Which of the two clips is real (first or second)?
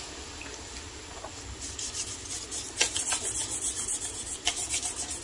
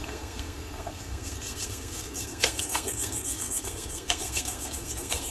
first